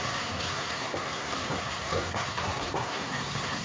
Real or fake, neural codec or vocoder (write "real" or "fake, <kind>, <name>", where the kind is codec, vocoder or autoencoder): fake, codec, SNAC